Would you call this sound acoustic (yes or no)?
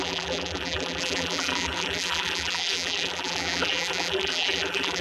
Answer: no